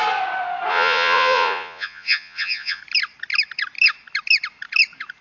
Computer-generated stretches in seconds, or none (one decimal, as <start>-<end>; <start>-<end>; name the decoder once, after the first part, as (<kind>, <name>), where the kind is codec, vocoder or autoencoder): 0.7-2.8 (vocoder, Vocos)